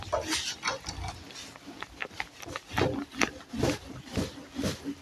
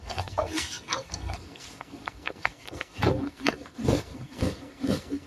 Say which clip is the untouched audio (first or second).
first